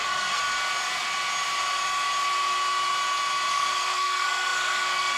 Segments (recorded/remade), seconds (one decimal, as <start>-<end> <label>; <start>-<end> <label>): 0.0-0.4 remade; 0.4-3.5 recorded; 3.5-5.2 remade